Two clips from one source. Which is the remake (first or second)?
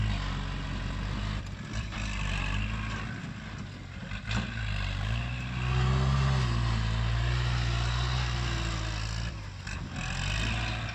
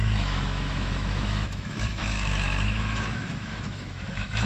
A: second